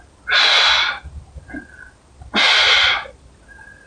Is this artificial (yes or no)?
no